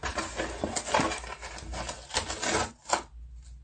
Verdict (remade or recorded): recorded